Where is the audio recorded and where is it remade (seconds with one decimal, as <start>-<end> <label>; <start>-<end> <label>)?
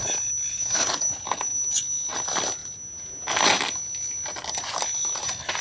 0.0-0.5 recorded; 0.5-1.0 remade; 1.0-5.6 recorded